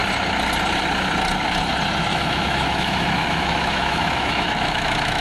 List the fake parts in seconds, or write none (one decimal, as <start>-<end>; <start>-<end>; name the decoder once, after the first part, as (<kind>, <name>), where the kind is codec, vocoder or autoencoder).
2.1-5.2 (autoencoder, DAC-VAE)